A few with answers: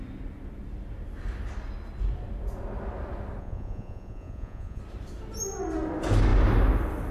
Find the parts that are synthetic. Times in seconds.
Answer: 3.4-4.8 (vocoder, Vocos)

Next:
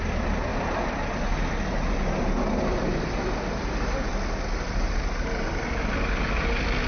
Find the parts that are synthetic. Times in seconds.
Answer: none

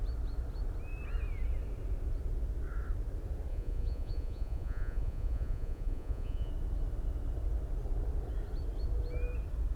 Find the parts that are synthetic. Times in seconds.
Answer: 3.5-6.5 (vocoder, Vocos)

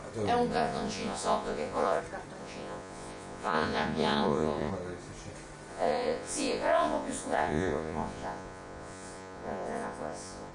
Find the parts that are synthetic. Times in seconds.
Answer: 0.5-2.0 (vocoder, Vocos); 2.4-4.7; 5.7-10.5

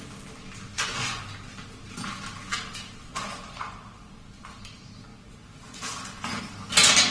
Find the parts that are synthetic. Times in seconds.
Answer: 0.7-1.2 (vocoder, Vocos); 3.1-4.1; 5.1-6.4